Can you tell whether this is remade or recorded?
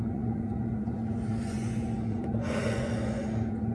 remade